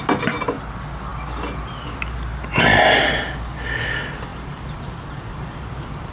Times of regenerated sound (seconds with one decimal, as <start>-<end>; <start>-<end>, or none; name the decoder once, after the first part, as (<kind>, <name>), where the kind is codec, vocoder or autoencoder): 4.3-5.6 (vocoder, BigVGAN v2)